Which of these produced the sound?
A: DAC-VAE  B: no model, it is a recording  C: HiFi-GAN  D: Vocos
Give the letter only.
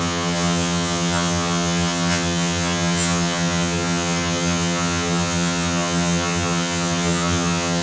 C